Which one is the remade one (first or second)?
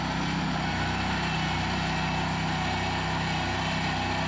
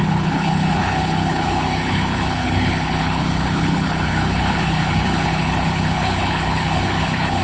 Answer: second